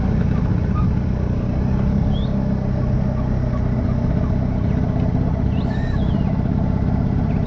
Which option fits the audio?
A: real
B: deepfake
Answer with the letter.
A